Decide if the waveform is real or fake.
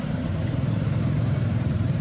fake